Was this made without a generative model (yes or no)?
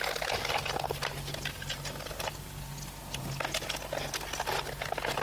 yes